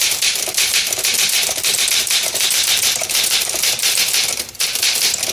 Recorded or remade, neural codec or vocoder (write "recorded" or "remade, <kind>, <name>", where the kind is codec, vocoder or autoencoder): remade, vocoder, BigVGAN v2